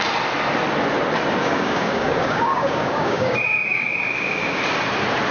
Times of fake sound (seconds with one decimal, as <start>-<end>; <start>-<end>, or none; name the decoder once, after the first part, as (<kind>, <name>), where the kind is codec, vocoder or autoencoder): 1.4-4.6 (codec, DAC)